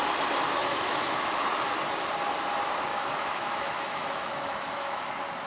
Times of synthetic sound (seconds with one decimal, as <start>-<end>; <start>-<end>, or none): 0.6-1.2; 2.9-5.1